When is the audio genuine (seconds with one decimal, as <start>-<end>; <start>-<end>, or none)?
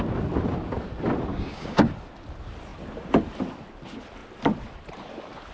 0.0-1.3; 1.8-5.5